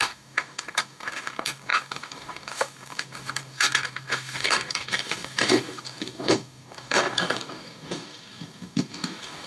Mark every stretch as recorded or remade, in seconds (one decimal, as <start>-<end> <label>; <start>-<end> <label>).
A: 0.0-9.5 remade

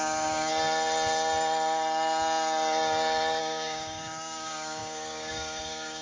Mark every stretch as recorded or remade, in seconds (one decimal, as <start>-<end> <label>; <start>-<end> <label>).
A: 0.0-0.5 remade; 0.5-3.4 recorded; 3.4-6.0 remade

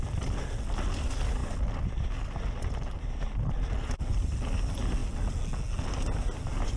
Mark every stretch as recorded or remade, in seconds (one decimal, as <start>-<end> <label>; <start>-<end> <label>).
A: 0.0-6.8 recorded